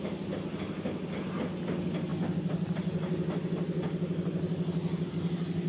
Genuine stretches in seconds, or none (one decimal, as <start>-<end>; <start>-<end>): 0.0-5.7